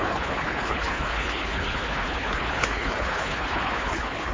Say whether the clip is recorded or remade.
remade